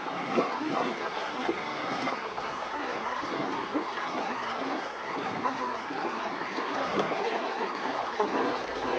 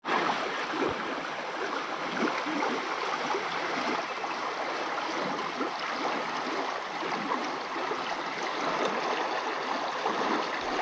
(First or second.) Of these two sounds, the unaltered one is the second